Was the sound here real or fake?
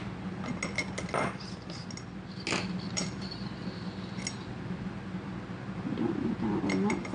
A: real